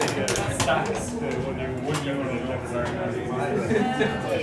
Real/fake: real